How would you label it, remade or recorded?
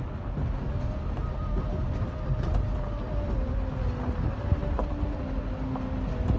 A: recorded